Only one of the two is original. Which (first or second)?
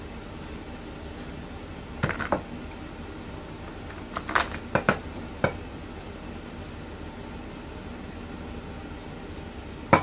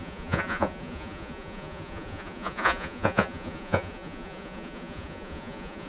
first